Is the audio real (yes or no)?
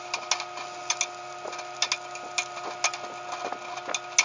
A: yes